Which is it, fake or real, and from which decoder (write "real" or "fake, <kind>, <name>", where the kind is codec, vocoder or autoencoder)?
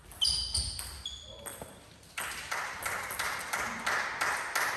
real